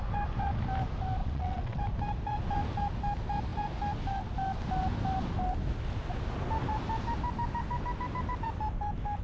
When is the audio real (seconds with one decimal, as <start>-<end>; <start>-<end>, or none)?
0.0-1.2; 1.8-9.2